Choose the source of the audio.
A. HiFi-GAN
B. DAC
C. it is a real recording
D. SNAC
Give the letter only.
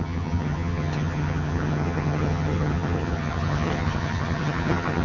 A